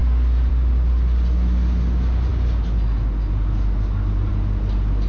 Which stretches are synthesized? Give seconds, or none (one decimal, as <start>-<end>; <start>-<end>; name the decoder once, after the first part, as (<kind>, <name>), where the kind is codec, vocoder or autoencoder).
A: none